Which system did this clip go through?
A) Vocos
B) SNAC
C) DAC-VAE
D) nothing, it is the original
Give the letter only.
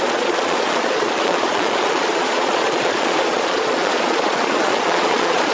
A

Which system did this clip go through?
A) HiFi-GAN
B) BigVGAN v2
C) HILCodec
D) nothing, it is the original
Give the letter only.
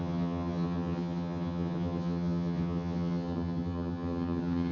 A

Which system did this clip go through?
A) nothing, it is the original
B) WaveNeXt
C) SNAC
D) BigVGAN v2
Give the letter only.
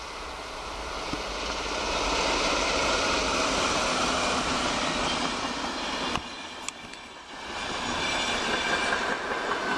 A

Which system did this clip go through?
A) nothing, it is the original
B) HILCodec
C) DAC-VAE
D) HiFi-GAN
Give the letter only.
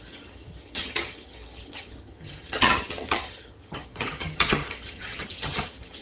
D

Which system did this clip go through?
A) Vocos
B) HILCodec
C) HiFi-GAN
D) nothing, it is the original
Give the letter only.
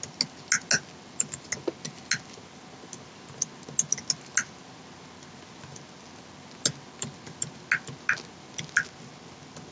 D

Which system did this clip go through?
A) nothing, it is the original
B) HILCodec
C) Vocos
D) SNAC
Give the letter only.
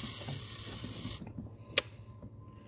A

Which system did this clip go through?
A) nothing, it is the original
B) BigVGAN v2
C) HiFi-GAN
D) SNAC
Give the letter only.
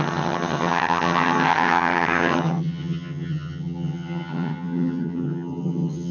C